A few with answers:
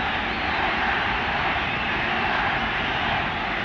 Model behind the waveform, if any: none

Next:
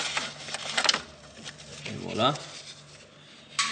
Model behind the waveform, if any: none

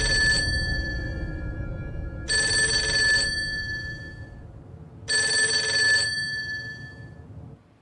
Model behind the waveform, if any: none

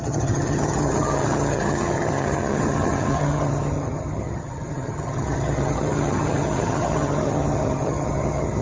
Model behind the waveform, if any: vocoder, HiFi-GAN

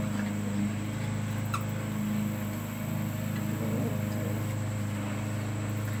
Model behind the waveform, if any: none